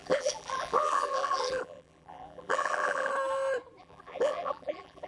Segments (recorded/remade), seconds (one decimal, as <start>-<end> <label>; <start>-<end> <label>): 0.0-3.1 remade; 3.1-3.8 recorded; 3.8-5.1 remade